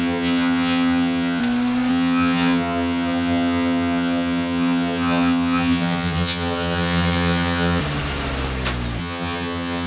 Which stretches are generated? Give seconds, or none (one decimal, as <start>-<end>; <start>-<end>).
0.0-1.4; 1.9-7.8; 9.0-9.9